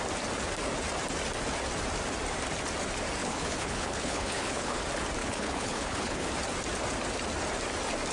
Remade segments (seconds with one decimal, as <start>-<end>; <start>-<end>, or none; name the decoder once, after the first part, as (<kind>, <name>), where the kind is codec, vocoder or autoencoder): 3.2-4.8 (codec, HILCodec); 5.2-6.3